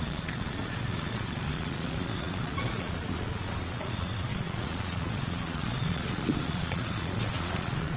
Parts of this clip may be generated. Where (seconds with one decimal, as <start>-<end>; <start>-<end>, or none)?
0.0-8.0